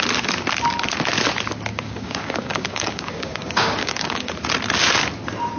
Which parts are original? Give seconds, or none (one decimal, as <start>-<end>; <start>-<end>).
0.0-1.7; 4.3-5.6